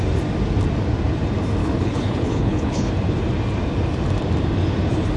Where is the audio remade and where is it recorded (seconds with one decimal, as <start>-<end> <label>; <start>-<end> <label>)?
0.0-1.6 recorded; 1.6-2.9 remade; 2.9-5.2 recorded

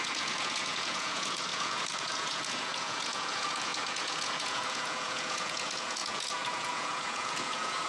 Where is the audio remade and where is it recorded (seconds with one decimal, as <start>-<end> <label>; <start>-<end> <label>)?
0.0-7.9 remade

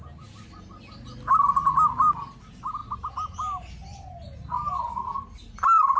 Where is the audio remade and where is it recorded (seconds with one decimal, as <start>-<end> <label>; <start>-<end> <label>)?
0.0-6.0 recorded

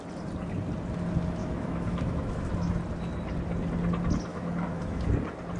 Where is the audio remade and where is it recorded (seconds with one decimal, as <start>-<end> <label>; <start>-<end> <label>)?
0.0-1.4 recorded; 1.4-2.5 remade; 2.5-4.3 recorded; 4.3-5.0 remade; 5.0-5.6 recorded